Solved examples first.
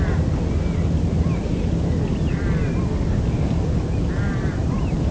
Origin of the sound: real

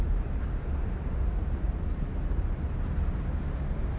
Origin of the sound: real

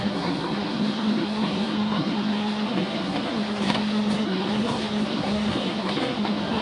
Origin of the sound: fake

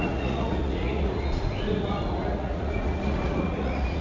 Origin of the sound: fake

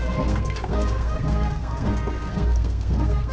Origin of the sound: fake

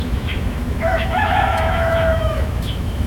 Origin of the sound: fake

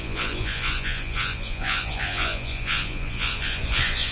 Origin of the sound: fake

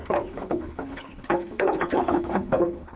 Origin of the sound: fake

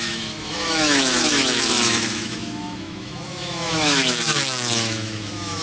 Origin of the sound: fake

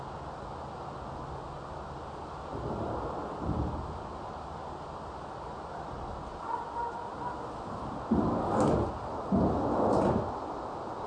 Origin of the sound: real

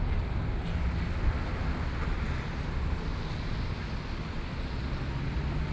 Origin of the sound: real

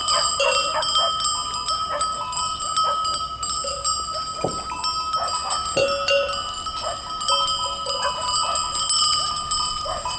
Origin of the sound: real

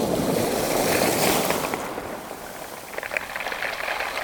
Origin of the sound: real